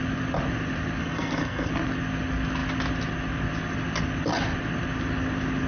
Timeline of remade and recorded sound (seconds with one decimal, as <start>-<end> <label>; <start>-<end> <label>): 0.0-1.0 recorded; 1.0-1.7 remade; 1.7-5.7 recorded